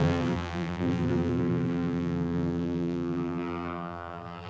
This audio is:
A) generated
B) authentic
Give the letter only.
A